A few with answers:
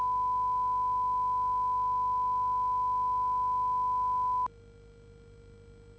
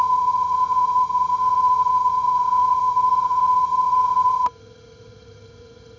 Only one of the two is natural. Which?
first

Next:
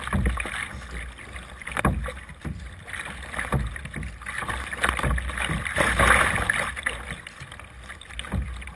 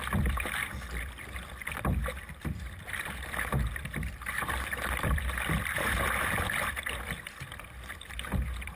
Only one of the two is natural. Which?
first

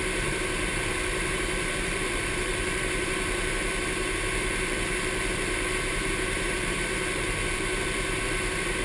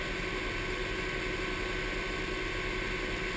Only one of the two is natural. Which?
second